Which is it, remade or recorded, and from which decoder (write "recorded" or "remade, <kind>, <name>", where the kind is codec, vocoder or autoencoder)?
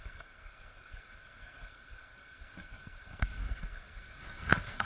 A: remade, codec, SNAC